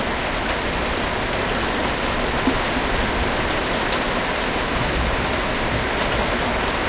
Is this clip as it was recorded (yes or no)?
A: yes